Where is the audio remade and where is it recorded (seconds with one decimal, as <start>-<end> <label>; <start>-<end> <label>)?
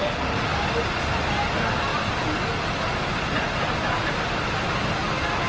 0.0-5.5 recorded